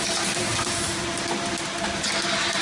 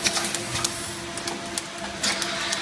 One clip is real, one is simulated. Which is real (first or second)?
second